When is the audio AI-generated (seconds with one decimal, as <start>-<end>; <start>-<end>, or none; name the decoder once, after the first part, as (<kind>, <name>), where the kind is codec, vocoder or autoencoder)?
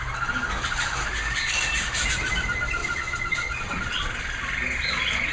2.8-4.2 (vocoder, Vocos)